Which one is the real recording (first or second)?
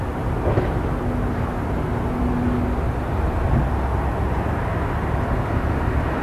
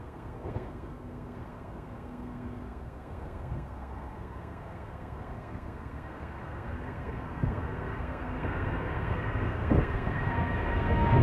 first